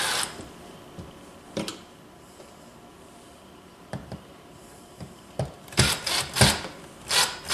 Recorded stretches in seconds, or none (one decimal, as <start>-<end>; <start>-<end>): 0.0-1.7; 2.4-2.9; 5.3-7.5